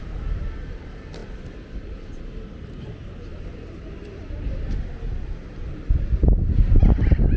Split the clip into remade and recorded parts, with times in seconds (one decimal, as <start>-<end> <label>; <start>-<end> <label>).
0.0-7.4 remade